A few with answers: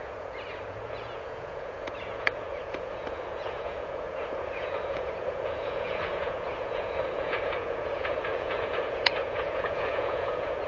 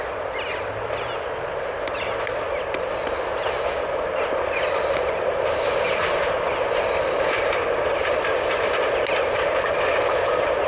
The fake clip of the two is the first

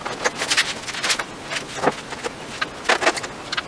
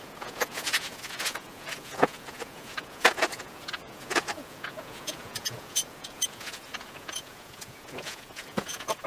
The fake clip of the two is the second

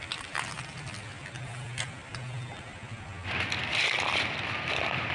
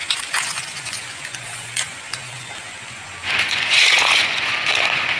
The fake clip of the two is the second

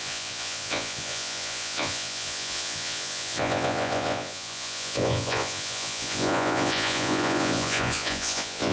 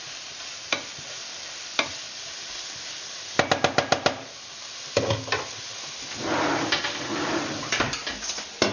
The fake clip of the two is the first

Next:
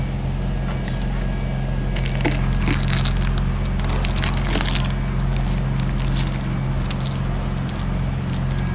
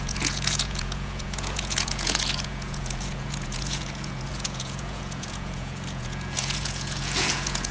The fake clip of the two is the second